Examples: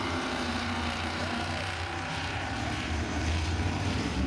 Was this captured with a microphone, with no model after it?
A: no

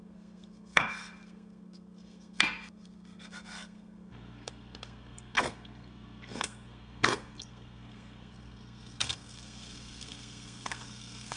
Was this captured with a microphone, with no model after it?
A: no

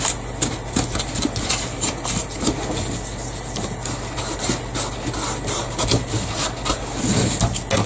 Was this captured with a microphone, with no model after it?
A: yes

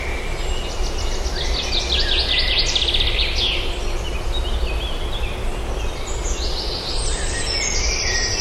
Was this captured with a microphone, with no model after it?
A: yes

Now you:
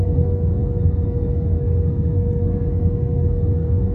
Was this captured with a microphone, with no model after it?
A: no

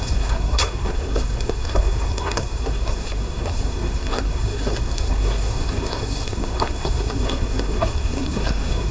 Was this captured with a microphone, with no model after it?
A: no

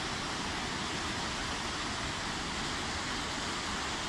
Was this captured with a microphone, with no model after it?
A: yes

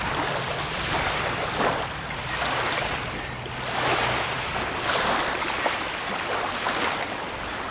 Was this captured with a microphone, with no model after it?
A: yes